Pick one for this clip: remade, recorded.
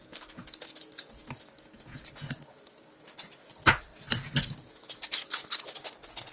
recorded